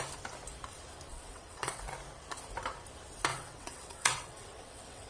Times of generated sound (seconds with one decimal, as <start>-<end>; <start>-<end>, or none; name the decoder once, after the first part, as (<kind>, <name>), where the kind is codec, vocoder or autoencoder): 1.1-1.8 (vocoder, WaveNeXt); 3.3-5.1